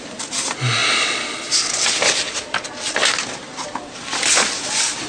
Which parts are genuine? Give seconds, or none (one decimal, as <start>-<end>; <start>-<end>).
0.0-5.1